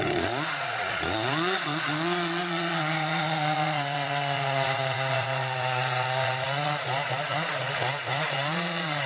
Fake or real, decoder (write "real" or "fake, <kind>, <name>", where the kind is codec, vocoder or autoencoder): fake, vocoder, Vocos